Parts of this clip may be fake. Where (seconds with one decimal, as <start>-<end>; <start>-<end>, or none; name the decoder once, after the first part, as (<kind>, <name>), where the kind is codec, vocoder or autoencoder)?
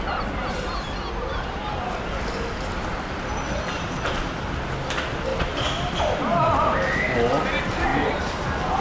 none